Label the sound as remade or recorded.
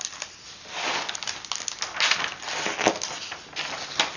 recorded